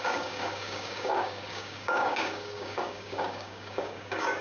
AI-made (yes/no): yes